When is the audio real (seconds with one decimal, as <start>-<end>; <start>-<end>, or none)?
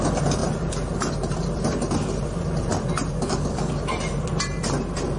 0.0-3.1; 3.7-5.2